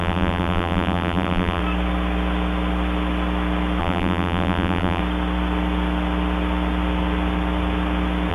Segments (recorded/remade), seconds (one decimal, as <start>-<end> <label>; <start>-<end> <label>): 0.0-1.6 remade; 1.6-3.8 recorded; 3.8-5.0 remade; 5.0-8.3 recorded